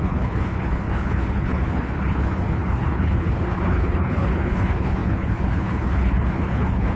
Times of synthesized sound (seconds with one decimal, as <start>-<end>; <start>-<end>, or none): 0.0-7.0